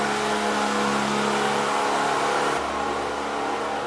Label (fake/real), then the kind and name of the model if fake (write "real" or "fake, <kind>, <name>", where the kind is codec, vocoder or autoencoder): real